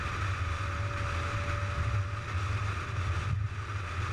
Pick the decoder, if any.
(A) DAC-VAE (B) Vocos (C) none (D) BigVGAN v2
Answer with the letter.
C